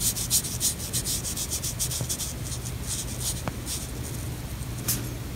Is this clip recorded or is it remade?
recorded